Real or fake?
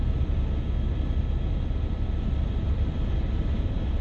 fake